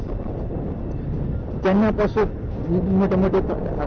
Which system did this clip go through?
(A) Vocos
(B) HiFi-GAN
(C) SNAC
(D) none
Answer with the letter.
D